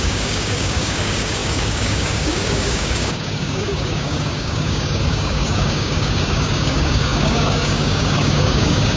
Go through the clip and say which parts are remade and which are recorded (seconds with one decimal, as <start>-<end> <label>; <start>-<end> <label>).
0.0-9.0 remade